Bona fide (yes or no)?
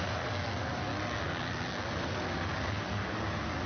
yes